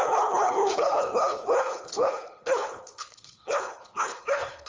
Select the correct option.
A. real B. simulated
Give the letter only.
B